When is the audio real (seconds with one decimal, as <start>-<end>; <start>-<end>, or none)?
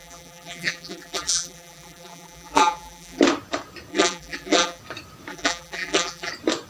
3.2-3.9; 4.8-5.3; 6.3-6.7